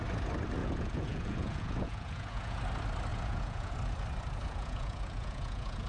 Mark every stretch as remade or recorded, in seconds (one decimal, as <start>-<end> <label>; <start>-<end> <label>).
0.0-0.6 recorded; 0.6-2.6 remade; 2.6-3.1 recorded; 3.1-3.7 remade; 3.7-4.4 recorded; 4.4-5.9 remade